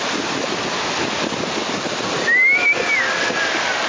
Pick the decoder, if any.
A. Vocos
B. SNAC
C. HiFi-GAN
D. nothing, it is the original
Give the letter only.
D